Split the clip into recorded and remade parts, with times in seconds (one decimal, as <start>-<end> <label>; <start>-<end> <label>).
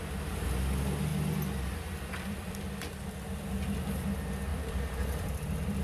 0.0-1.1 recorded; 1.1-2.5 remade; 2.5-4.5 recorded; 4.5-5.8 remade